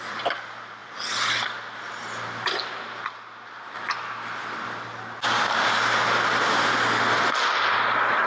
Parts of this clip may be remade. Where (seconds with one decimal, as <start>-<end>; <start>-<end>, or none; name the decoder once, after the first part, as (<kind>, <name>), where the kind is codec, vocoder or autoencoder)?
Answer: none